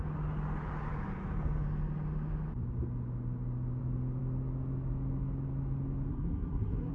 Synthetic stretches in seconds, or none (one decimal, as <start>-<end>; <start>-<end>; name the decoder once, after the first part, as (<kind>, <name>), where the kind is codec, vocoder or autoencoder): 6.1-6.9 (codec, SNAC)